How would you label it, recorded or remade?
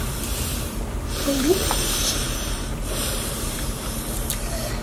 remade